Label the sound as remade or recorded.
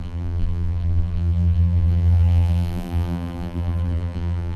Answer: remade